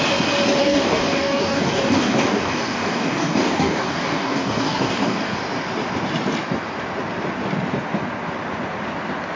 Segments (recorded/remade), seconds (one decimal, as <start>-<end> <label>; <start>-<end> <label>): 0.0-0.6 recorded; 0.6-5.4 remade; 5.4-9.4 recorded